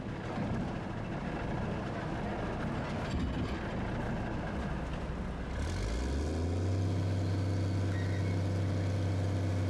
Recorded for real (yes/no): yes